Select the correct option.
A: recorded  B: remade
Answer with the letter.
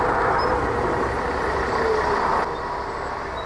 A